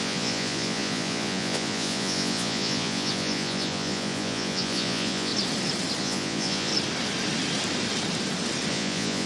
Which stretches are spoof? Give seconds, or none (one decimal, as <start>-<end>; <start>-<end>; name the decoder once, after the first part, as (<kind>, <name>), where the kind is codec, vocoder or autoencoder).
0.0-5.3 (vocoder, Vocos); 6.0-6.7; 8.7-9.3